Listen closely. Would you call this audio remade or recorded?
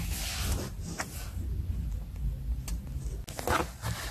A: recorded